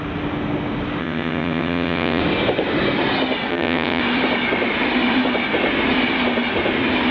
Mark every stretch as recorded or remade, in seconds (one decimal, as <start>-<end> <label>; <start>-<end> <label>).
0.0-1.0 recorded; 1.0-2.2 remade; 2.2-3.5 recorded; 3.5-4.0 remade; 4.0-7.1 recorded